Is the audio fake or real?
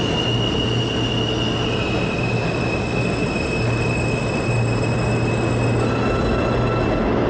real